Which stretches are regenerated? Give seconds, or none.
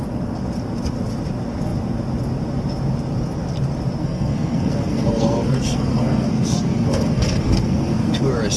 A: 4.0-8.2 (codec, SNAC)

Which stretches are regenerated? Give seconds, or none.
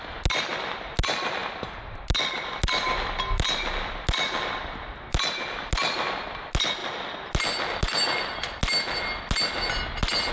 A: none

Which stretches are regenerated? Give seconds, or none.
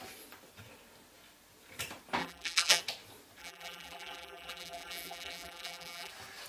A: 2.2-2.8 (vocoder, BigVGAN v2); 3.4-6.1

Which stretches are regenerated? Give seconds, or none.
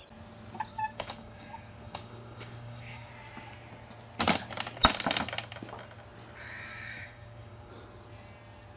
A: 0.7-3.1 (codec, DAC); 6.7-7.7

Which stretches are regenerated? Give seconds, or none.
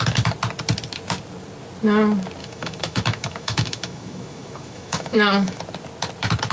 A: 2.4-5.6 (autoencoder, DAC-VAE)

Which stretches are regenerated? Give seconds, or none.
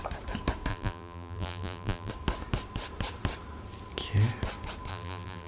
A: 0.7-2.1 (vocoder, BigVGAN v2); 4.9-5.5